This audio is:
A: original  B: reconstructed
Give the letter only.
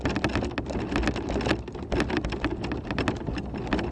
A